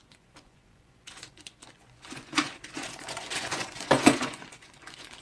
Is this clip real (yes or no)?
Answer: no